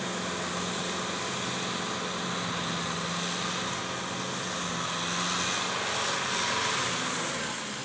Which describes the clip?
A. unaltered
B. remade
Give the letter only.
A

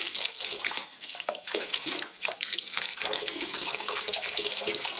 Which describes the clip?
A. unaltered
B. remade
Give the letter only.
B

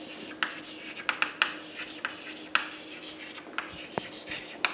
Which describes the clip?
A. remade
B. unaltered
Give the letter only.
B